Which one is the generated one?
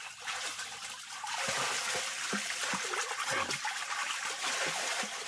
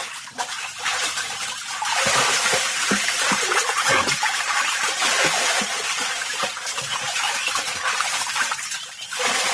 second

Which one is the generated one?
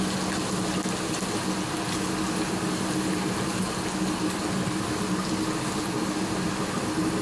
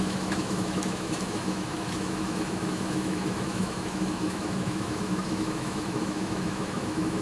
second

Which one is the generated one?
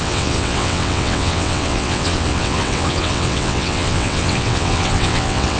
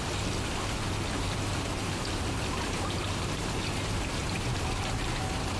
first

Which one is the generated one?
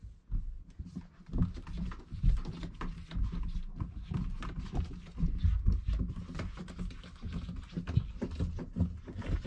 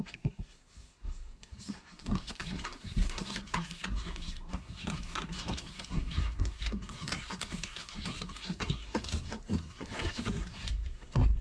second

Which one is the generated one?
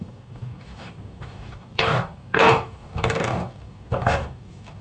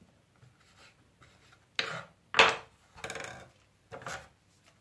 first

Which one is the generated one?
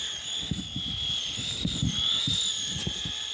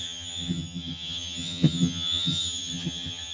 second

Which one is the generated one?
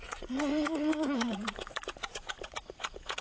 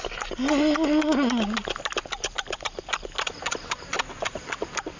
first